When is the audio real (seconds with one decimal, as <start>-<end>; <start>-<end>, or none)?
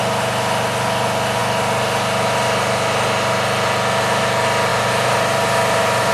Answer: 0.0-4.7